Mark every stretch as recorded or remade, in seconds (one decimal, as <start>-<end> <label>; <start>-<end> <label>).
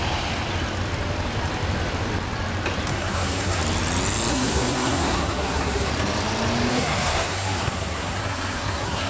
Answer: 0.0-2.9 recorded; 2.9-3.6 remade; 3.6-4.3 recorded; 4.3-5.9 remade; 5.9-6.7 recorded; 6.7-9.1 remade